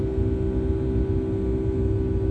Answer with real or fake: real